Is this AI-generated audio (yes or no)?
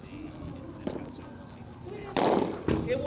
no